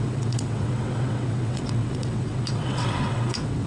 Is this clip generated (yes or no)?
yes